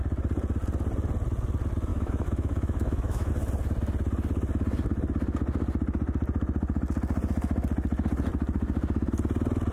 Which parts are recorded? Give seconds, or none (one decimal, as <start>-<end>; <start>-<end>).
0.0-1.9; 3.3-9.7

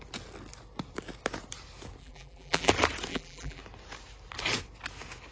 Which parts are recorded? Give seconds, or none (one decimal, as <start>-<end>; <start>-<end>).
0.0-2.0; 2.7-3.1; 3.6-5.3

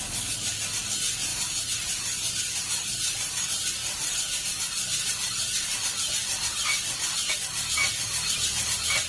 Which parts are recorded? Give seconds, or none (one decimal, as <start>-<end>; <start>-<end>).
0.0-1.3; 3.4-3.8; 7.4-9.1